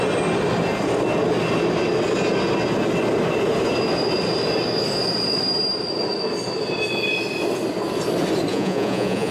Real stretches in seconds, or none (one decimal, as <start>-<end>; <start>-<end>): 0.0-8.5